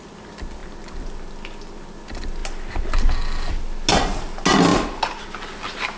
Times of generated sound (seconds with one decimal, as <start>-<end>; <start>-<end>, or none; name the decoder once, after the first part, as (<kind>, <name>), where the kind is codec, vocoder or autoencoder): none